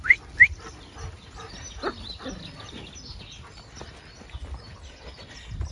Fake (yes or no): no